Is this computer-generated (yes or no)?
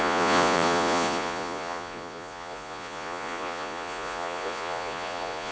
yes